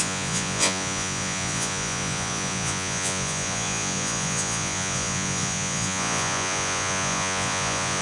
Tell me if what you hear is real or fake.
fake